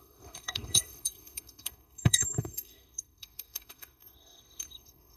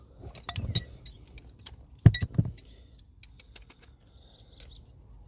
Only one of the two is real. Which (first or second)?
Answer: second